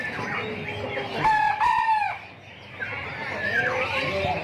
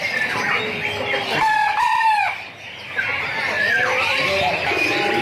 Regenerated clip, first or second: second